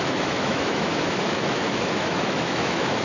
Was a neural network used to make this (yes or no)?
yes